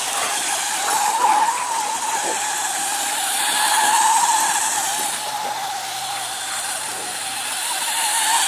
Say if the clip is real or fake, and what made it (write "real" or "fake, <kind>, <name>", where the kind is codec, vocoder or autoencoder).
real